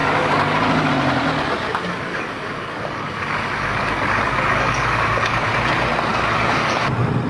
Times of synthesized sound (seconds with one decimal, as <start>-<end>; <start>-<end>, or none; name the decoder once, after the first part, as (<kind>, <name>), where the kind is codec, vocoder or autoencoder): 0.0-0.9 (codec, DAC); 1.7-5.5; 6.1-6.8